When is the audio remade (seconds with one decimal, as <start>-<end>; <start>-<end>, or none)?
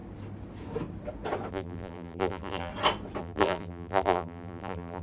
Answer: 1.5-2.7; 3.2-5.0